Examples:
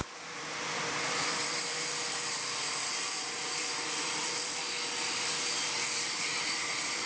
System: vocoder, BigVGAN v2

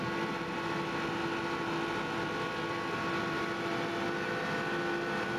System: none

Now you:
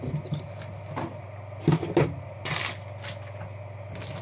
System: none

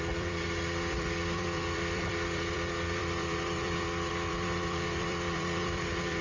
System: vocoder, BigVGAN v2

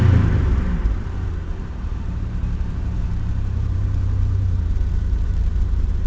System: vocoder, BigVGAN v2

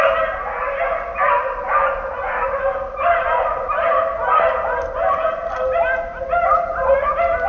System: none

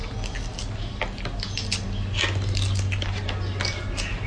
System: none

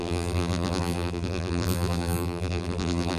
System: vocoder, BigVGAN v2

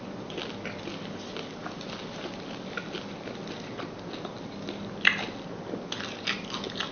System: none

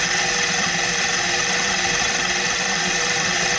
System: vocoder, BigVGAN v2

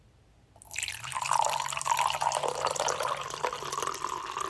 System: vocoder, BigVGAN v2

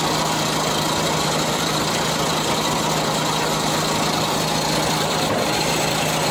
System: none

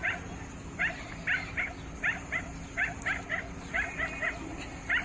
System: none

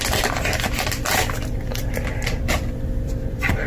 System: vocoder, BigVGAN v2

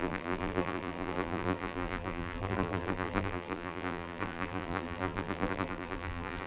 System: vocoder, BigVGAN v2